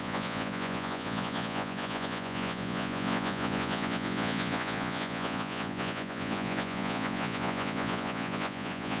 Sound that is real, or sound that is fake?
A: fake